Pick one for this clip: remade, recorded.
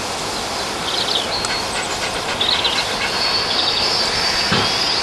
recorded